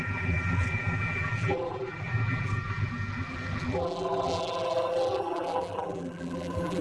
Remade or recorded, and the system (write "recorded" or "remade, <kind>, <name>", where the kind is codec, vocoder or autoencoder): remade, vocoder, BigVGAN v2